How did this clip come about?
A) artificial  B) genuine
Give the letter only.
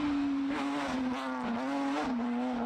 B